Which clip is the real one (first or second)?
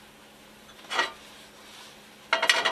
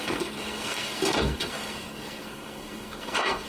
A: first